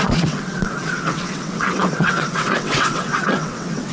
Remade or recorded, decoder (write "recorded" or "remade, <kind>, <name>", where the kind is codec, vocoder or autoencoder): remade, vocoder, WaveNeXt